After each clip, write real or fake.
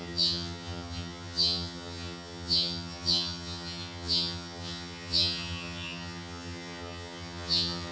fake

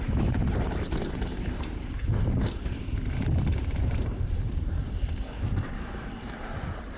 fake